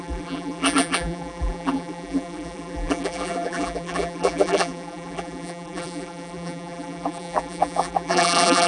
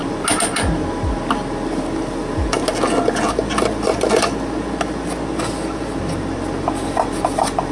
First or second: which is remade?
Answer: first